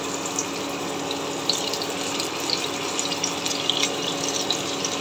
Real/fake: real